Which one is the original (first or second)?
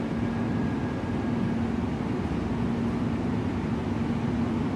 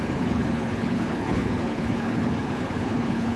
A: first